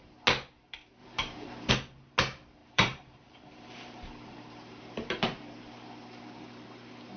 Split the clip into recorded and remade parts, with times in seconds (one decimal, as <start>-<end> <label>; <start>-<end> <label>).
0.0-1.0 recorded; 1.0-1.7 remade; 1.7-2.6 recorded; 2.6-5.7 remade; 5.7-7.2 recorded